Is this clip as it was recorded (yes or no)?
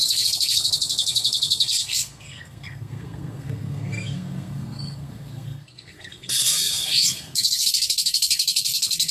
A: no